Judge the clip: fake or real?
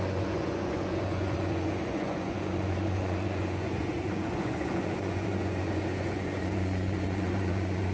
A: fake